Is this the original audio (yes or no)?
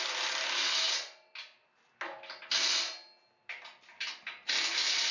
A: yes